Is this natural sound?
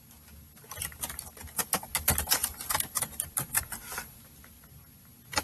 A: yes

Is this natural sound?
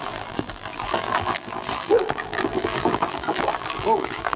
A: no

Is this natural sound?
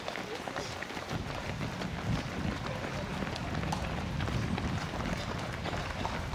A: yes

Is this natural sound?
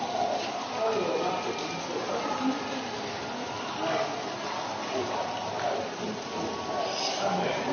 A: yes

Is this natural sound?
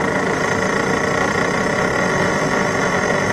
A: yes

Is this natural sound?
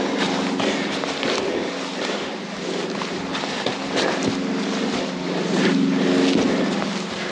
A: yes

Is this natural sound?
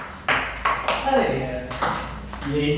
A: yes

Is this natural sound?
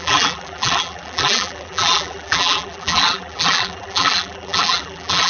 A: no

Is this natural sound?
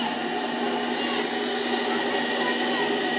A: yes